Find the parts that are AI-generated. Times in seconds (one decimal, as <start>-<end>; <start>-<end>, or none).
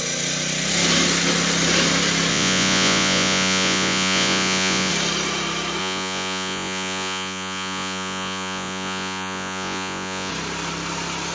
2.3-4.9; 5.8-10.3